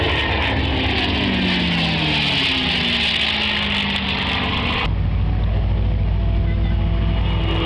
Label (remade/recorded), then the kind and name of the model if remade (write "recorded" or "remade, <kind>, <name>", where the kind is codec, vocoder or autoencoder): recorded